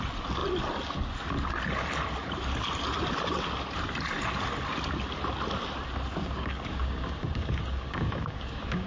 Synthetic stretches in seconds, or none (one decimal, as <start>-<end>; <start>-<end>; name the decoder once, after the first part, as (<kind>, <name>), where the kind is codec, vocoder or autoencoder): 6.2-8.9 (codec, DAC)